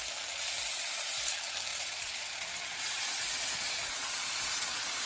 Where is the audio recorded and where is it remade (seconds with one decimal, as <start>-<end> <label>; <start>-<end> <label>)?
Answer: 0.0-1.7 recorded; 1.7-5.1 remade